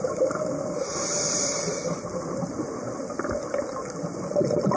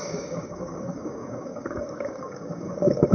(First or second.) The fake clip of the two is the second